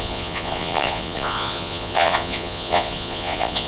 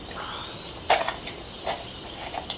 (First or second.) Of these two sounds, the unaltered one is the second